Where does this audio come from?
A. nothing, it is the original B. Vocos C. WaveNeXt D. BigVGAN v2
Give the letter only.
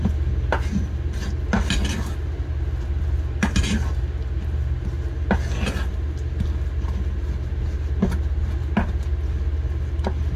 A